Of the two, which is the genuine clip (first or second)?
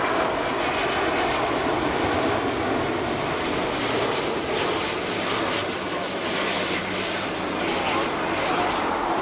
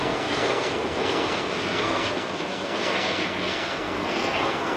first